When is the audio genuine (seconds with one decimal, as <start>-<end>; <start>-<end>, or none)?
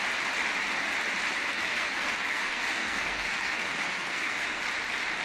0.0-1.5; 4.6-5.2